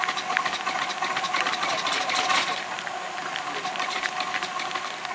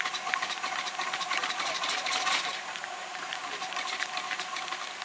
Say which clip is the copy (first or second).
second